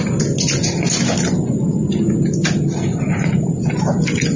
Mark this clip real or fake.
real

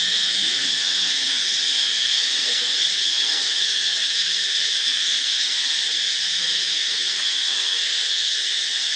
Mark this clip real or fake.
fake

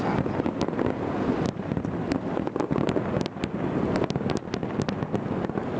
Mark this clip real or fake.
real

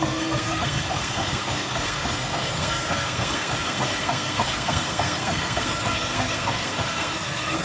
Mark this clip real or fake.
fake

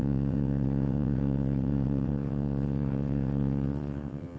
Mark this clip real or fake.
fake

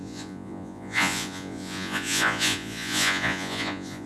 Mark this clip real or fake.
fake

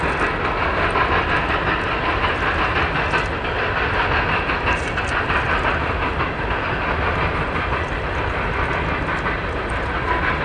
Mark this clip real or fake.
real